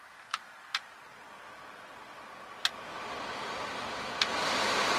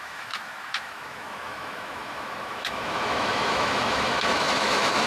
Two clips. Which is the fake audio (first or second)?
second